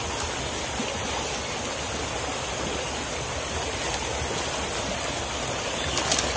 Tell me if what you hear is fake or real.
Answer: real